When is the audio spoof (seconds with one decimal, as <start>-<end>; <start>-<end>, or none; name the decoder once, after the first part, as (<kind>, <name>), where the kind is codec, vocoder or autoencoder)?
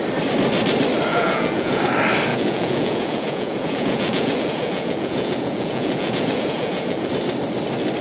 1.1-1.8 (vocoder, Vocos); 2.3-7.1